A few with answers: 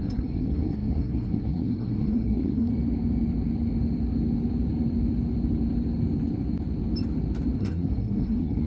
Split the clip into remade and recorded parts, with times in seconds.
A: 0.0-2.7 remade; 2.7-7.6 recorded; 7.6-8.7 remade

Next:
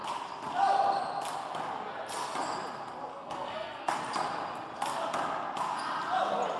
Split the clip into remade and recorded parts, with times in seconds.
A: 0.0-3.1 recorded; 3.1-3.9 remade; 3.9-6.6 recorded

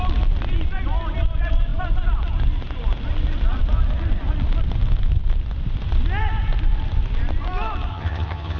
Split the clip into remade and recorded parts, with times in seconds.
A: 0.0-7.9 recorded; 7.9-8.6 remade

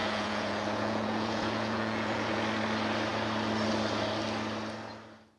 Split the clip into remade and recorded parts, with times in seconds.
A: 0.0-2.4 remade; 2.4-5.4 recorded

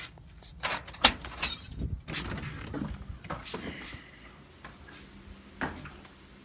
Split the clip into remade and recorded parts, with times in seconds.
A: 0.0-0.5 recorded; 0.5-1.9 remade; 1.9-6.4 recorded

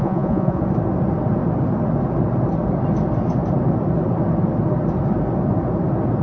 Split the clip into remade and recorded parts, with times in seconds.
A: 0.0-0.6 remade; 0.6-6.2 recorded